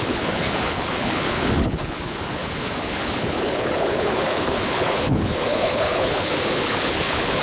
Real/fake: fake